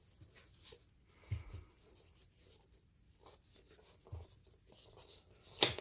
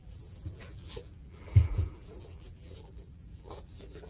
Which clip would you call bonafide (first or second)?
first